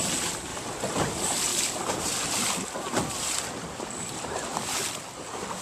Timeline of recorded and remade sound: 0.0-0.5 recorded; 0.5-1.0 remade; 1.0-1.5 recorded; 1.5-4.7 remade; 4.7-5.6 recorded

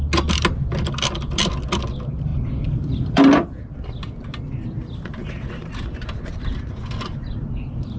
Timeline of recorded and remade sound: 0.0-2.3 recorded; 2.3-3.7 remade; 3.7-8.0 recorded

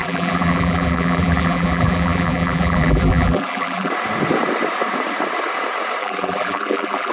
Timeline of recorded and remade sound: 0.0-3.9 remade; 3.9-6.0 recorded; 6.0-7.1 remade

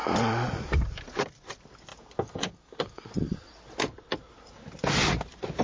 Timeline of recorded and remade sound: 0.0-1.3 remade; 1.3-5.6 recorded

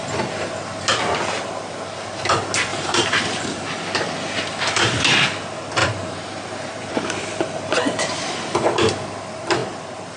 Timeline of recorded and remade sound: 0.0-2.7 recorded; 2.7-3.6 remade; 3.6-5.8 recorded; 5.8-6.9 remade; 6.9-10.2 recorded

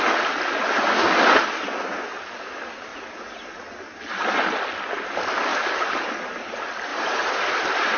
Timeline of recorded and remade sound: 0.0-5.5 recorded; 5.5-6.1 remade; 6.1-6.9 recorded; 6.9-8.0 remade